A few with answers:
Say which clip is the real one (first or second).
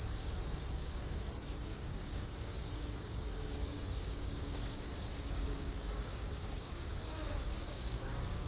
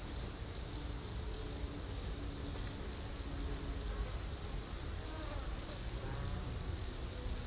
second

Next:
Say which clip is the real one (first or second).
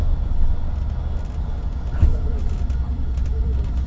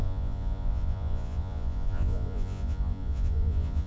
first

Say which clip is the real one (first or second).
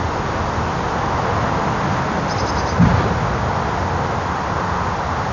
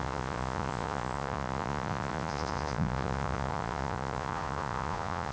first